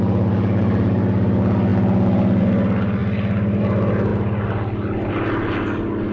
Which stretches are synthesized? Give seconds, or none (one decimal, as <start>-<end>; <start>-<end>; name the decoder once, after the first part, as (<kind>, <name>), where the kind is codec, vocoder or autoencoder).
none